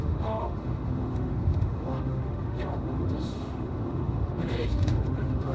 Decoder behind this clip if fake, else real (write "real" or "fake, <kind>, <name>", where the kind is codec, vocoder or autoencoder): fake, autoencoder, DAC-VAE